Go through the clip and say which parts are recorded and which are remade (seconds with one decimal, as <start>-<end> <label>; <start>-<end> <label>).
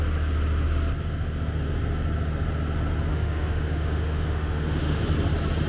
0.0-3.1 recorded; 3.1-5.0 remade; 5.0-5.7 recorded